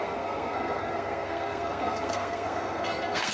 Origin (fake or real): fake